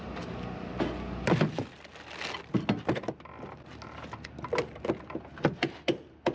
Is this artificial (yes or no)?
no